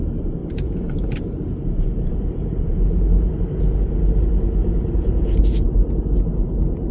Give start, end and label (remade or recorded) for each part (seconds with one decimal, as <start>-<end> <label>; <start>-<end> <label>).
0.0-0.4 recorded; 0.4-3.3 remade; 3.3-4.6 recorded; 4.6-5.4 remade; 5.4-6.9 recorded